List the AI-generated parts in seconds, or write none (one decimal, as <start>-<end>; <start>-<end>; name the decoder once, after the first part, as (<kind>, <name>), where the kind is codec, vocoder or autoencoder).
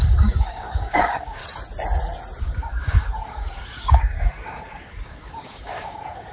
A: 0.0-1.4 (codec, DAC); 2.4-6.3